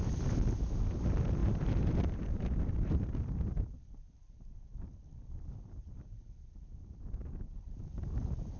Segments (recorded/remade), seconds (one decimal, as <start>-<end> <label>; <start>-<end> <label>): 0.0-1.4 recorded; 1.4-3.0 remade; 3.0-8.6 recorded